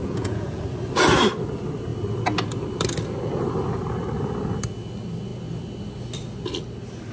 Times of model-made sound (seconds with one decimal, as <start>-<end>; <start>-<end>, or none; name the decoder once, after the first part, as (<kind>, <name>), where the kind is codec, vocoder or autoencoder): 0.0-0.6 (vocoder, Vocos)